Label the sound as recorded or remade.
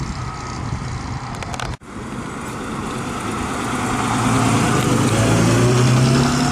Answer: recorded